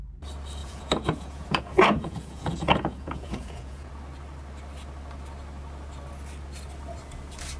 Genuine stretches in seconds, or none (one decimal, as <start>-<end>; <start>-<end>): 0.0-0.6; 3.9-7.6